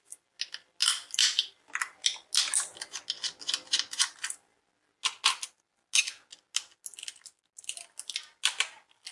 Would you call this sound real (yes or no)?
yes